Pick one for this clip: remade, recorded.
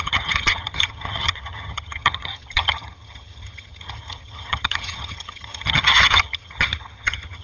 remade